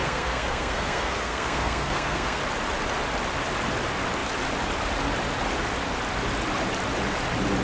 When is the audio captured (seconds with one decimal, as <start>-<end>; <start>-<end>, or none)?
2.4-7.6